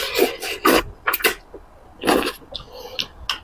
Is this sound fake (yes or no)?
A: no